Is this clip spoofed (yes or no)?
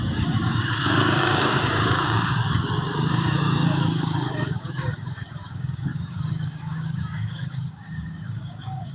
yes